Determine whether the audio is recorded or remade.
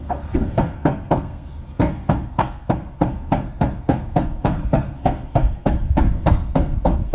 remade